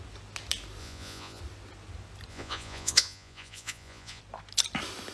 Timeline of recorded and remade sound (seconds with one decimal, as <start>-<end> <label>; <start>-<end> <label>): 0.0-0.8 recorded; 0.8-1.4 remade; 1.4-2.3 recorded; 2.3-4.2 remade; 4.2-5.1 recorded